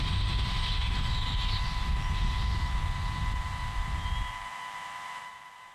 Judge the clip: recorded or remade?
remade